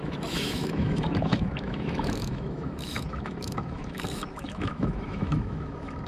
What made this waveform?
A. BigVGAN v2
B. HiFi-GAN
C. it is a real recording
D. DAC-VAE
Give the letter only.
D